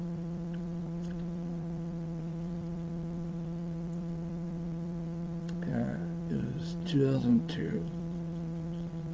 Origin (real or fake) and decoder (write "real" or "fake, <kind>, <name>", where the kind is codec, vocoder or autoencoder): fake, vocoder, WaveNeXt